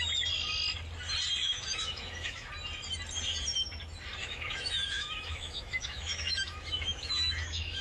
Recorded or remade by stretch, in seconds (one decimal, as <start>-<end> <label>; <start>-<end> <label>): 0.0-1.4 recorded; 1.4-2.5 remade; 2.5-4.2 recorded; 4.2-7.8 remade